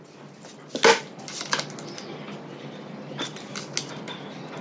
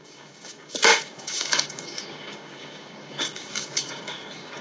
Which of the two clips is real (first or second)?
first